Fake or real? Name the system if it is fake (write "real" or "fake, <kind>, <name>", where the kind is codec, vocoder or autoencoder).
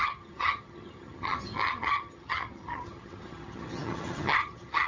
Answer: fake, vocoder, HiFi-GAN